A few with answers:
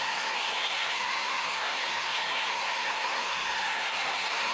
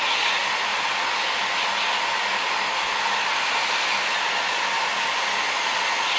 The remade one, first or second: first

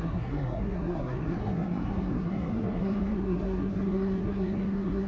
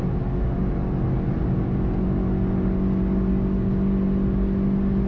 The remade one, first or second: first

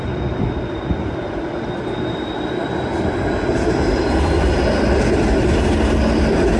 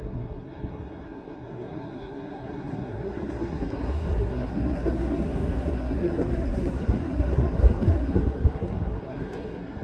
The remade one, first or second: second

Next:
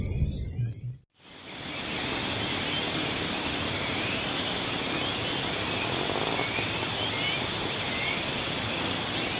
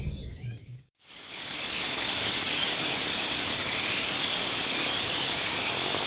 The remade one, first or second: second